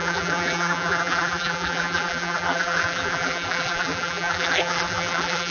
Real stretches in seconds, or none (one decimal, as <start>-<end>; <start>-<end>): none